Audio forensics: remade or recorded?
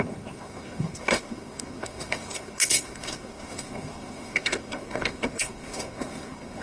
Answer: remade